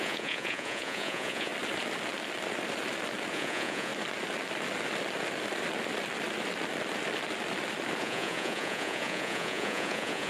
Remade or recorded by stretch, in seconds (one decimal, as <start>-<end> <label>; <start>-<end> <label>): 0.0-1.5 remade; 1.5-3.3 recorded; 3.3-3.9 remade; 3.9-8.0 recorded; 8.0-10.3 remade